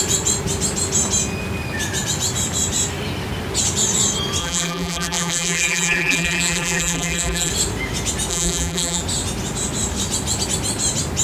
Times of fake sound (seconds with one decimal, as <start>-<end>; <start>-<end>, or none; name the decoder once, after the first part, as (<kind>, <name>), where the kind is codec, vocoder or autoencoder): 4.4-7.5 (vocoder, BigVGAN v2); 8.3-9.0